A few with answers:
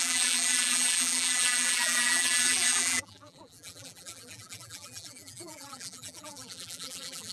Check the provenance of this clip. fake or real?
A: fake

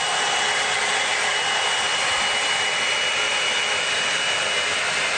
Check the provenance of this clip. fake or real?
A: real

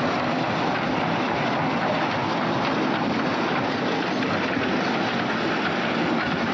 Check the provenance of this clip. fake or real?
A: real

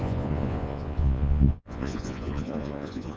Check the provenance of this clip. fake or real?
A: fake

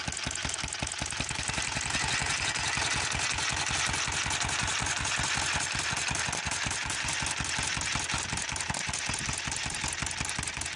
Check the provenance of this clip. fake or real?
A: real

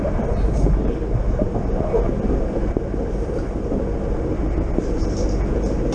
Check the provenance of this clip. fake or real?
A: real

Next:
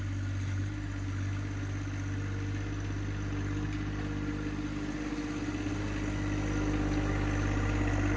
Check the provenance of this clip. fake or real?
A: real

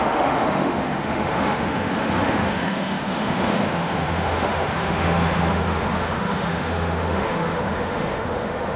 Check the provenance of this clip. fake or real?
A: fake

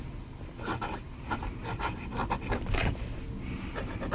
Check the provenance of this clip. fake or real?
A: fake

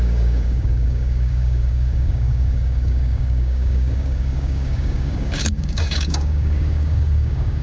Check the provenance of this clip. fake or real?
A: fake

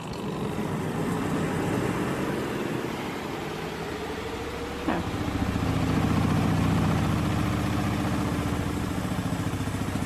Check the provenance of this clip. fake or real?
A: real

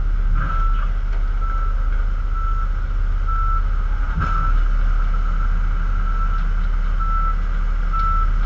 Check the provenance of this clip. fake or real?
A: real